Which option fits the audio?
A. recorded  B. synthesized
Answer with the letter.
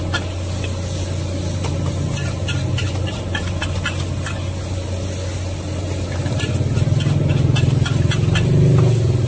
A